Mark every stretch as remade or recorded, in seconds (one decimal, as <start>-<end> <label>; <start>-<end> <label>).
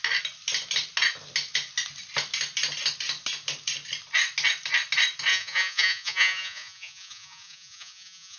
0.0-5.3 recorded; 5.3-8.4 remade